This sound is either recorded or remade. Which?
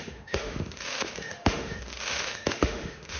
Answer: remade